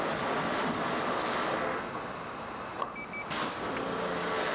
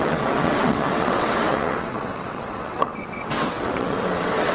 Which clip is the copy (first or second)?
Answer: second